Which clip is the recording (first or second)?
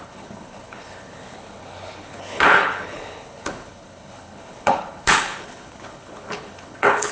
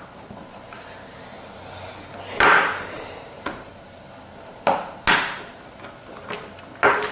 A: second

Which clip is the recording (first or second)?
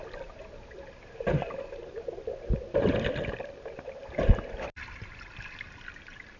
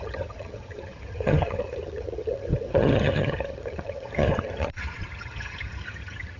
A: first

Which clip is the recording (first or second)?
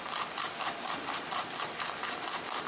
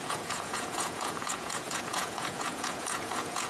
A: first